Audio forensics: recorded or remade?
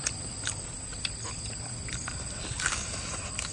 recorded